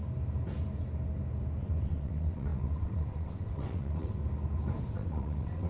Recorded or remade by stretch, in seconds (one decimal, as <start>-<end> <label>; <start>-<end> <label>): 0.0-1.6 recorded; 1.6-4.2 remade; 4.2-4.9 recorded; 4.9-5.7 remade